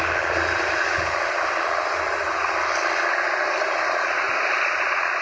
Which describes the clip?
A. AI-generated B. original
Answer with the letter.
B